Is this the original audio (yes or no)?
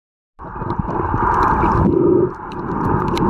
yes